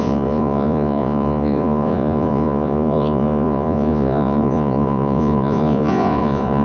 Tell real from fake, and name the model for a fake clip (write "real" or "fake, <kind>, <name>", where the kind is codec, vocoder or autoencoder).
fake, vocoder, Vocos